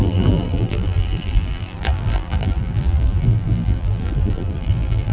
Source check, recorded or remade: remade